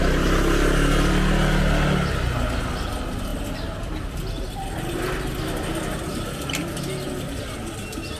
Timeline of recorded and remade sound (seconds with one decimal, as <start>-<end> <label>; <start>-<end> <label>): 0.0-8.2 recorded